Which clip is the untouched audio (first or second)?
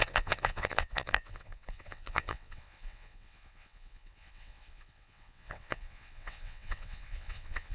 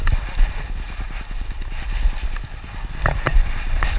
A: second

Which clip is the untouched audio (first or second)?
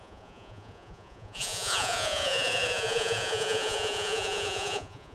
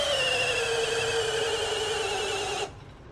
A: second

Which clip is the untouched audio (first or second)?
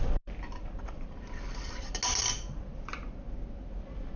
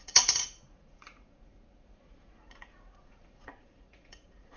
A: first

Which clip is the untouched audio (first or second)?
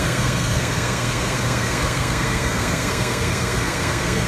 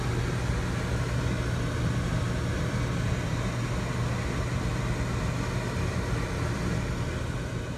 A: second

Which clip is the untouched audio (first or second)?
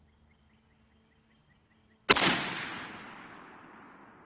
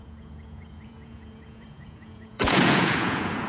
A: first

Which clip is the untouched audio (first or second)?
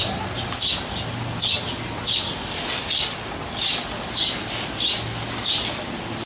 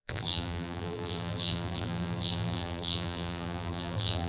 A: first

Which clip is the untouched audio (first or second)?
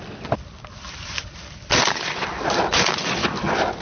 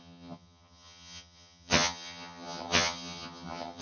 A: first